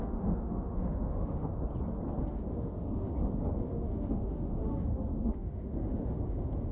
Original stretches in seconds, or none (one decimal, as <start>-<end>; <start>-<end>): 1.5-2.2; 3.1-3.6